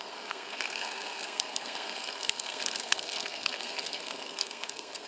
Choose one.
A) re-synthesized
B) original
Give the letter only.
A